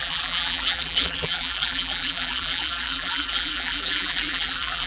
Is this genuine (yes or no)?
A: no